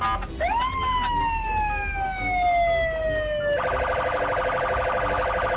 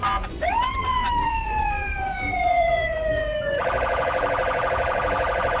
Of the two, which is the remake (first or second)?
second